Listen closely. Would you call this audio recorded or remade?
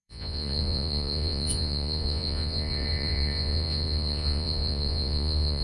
remade